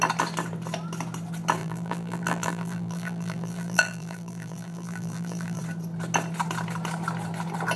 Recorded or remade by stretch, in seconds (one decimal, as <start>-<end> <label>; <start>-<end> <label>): 0.0-1.6 recorded; 1.6-5.6 remade; 5.6-7.8 recorded